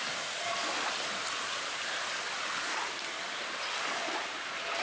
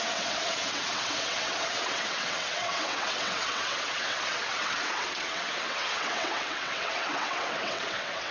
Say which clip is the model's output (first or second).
second